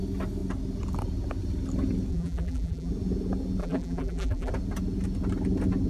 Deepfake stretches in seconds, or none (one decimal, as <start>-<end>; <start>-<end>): 2.1-2.9; 3.6-4.5